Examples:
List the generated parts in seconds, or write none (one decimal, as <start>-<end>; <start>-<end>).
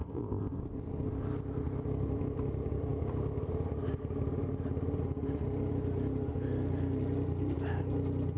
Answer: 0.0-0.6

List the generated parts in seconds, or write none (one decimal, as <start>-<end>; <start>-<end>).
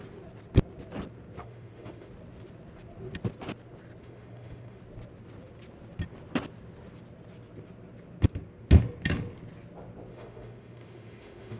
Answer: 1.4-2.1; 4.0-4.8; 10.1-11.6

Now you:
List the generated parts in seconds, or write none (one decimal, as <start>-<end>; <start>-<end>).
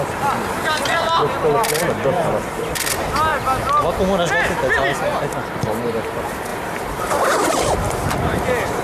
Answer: 1.5-2.0; 6.5-7.5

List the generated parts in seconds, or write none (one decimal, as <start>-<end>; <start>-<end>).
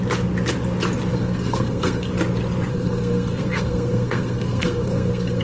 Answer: 1.1-2.1; 2.7-5.4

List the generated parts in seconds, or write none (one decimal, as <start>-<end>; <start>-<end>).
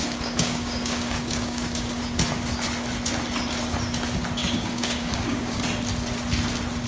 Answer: 0.0-2.0; 4.4-5.6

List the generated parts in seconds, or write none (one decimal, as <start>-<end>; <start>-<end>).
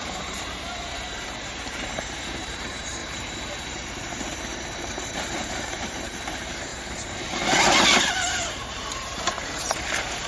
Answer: 0.0-6.7; 8.3-10.3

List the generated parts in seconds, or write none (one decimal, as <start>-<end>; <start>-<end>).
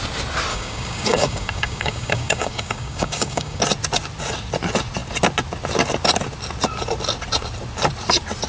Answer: 0.5-3.6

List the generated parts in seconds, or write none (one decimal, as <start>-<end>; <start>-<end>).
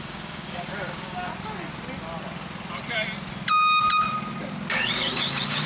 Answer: 0.0-1.3; 4.7-5.7